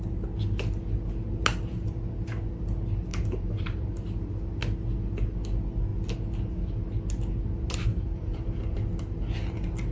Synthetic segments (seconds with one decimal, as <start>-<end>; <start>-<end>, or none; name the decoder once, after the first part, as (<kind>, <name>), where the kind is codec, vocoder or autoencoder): 3.1-4.0 (vocoder, BigVGAN v2); 7.9-8.4